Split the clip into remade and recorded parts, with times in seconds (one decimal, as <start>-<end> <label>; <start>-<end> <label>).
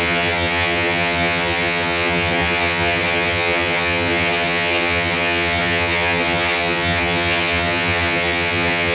0.0-8.9 remade